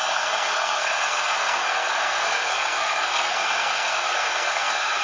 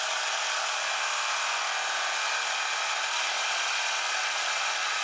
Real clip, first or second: second